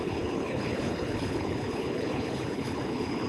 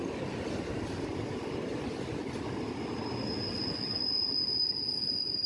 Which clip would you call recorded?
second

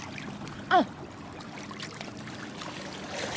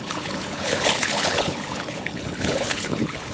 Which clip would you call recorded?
first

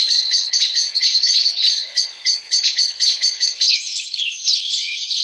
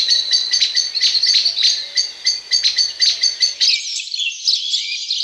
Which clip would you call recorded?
second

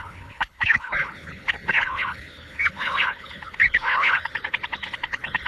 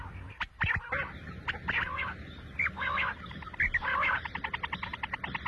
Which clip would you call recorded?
second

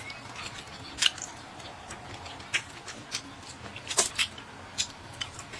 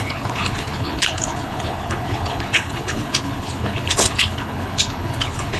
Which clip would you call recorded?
first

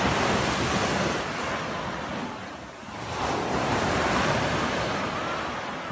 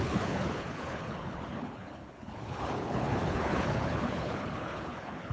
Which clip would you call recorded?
first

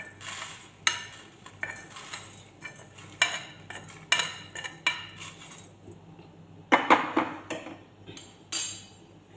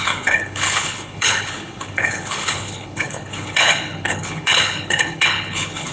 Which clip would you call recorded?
first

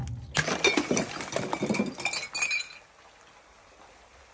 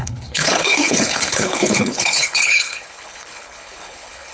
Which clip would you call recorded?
first